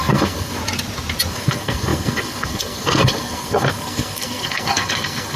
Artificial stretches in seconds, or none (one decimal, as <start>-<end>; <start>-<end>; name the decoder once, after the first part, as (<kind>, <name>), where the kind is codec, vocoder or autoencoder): 0.0-0.6 (codec, SNAC); 1.3-5.4